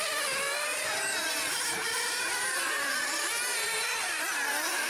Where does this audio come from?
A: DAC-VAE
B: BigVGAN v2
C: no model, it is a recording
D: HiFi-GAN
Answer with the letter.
B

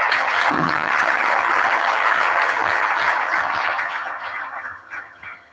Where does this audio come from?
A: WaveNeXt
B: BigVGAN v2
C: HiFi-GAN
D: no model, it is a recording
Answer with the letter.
C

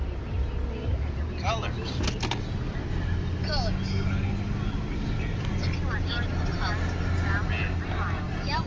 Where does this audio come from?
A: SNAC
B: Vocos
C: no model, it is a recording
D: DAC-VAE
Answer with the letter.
C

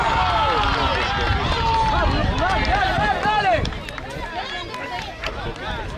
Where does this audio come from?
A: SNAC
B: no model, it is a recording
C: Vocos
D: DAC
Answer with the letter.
B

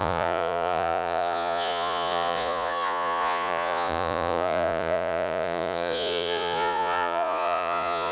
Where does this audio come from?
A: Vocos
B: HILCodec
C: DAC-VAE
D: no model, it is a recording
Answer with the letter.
A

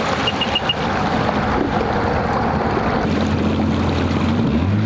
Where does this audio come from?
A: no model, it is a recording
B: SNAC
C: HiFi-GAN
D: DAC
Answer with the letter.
A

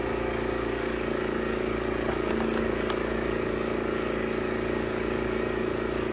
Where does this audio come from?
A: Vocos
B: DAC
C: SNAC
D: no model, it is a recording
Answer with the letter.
B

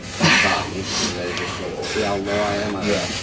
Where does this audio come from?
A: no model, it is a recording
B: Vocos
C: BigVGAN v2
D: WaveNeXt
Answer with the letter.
A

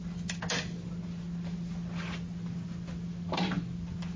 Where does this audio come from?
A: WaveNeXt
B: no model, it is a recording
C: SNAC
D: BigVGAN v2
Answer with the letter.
B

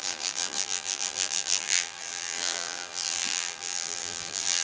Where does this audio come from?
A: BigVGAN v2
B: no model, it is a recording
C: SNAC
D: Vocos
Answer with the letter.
A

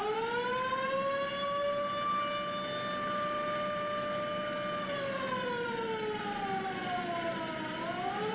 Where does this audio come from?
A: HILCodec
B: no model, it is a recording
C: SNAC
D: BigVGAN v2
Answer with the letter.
B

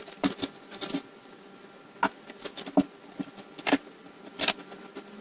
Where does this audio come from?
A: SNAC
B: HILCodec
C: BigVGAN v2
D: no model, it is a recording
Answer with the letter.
D